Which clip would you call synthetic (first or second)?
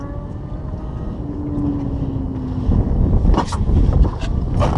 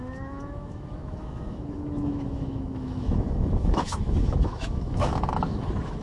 second